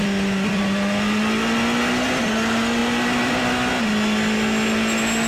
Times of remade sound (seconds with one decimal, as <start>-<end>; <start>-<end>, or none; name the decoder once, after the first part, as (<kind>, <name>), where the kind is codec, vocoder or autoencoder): none